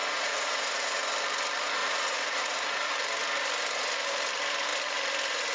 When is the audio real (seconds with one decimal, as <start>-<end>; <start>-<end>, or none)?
1.1-1.8; 2.9-5.5